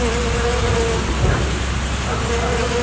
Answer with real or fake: real